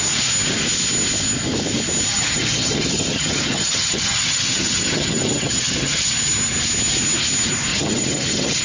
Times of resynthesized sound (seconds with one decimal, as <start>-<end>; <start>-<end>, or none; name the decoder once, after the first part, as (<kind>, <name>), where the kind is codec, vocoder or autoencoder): 2.1-6.1 (vocoder, HiFi-GAN); 7.7-8.6